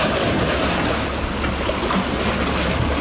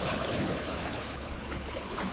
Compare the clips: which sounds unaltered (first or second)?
first